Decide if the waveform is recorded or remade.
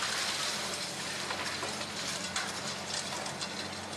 recorded